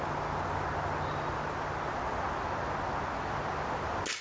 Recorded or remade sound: recorded